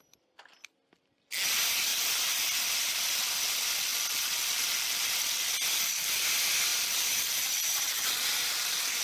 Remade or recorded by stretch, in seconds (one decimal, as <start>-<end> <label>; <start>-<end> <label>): 0.0-1.9 recorded; 1.9-3.4 remade; 3.4-3.9 recorded; 3.9-5.1 remade; 5.1-6.7 recorded; 6.7-9.0 remade